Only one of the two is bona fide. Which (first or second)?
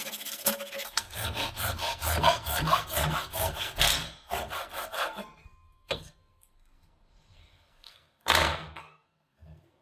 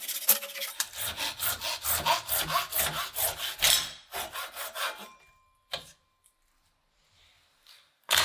second